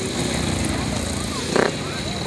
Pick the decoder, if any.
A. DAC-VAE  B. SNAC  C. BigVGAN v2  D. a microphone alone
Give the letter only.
D